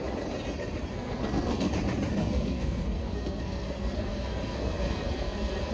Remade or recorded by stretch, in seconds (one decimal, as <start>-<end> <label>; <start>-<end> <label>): 0.0-0.9 recorded; 0.9-1.7 remade; 1.7-2.1 recorded; 2.1-5.7 remade